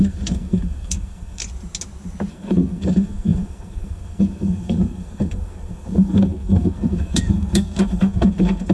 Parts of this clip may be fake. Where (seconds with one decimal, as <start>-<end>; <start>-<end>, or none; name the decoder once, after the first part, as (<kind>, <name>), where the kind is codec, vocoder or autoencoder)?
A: 0.0-1.4 (codec, SNAC); 2.3-8.7